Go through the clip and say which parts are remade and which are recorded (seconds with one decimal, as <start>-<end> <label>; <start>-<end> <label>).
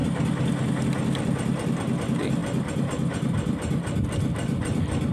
0.0-5.1 recorded